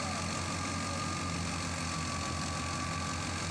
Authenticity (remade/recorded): recorded